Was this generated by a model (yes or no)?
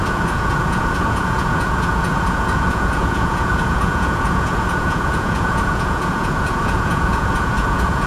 yes